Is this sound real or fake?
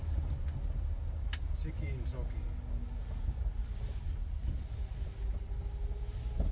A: real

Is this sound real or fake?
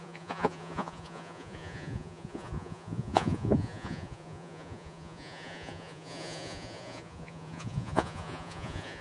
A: fake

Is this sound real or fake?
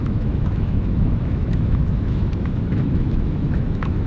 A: fake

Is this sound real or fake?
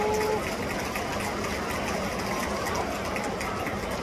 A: real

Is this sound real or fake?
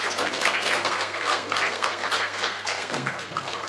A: fake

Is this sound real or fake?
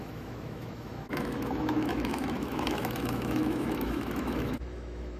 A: fake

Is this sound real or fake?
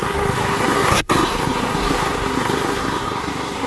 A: fake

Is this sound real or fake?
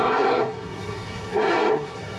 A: fake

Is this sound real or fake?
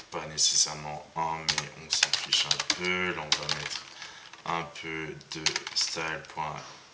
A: real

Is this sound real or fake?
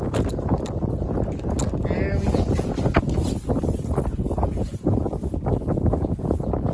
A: real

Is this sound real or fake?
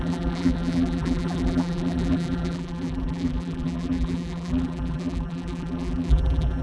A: fake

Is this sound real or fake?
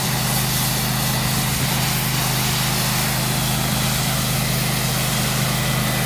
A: real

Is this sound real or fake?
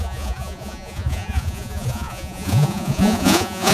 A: fake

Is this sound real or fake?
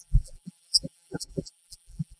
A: fake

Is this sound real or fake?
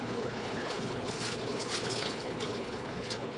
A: fake